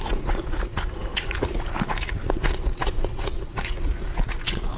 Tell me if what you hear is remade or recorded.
remade